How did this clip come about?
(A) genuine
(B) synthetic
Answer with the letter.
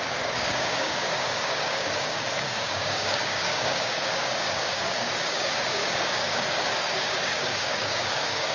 B